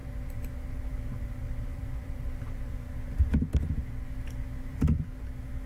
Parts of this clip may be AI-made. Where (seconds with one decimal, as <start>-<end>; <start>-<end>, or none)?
0.0-3.5; 4.6-5.7